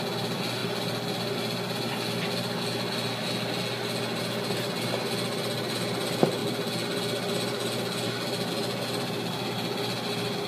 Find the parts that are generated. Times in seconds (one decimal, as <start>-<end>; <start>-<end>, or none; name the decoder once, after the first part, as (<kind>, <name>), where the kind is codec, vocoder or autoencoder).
none